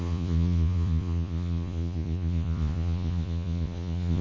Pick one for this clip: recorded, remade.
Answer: remade